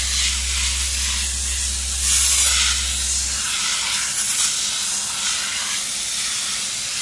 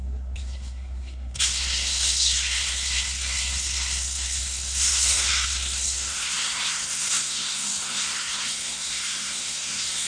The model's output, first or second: second